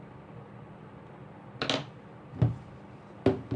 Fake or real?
real